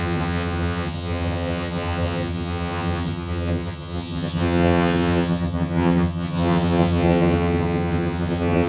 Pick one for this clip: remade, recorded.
remade